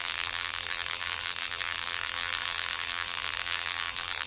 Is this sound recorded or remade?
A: remade